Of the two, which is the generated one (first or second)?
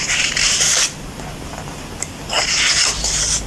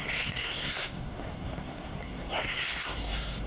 second